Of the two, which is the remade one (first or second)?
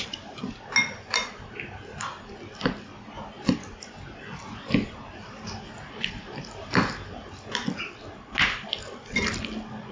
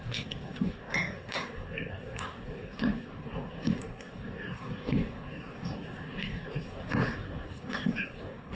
second